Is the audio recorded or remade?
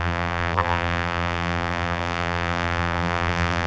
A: remade